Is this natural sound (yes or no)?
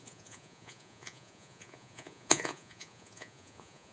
no